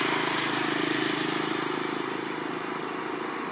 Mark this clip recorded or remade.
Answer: recorded